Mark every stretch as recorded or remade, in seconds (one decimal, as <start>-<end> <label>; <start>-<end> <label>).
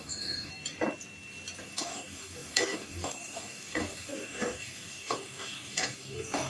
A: 0.0-0.5 remade; 0.5-1.6 recorded; 1.6-6.5 remade